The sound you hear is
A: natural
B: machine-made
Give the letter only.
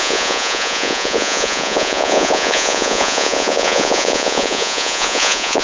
B